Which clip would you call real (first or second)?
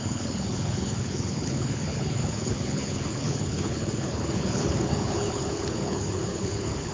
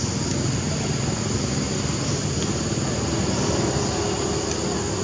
second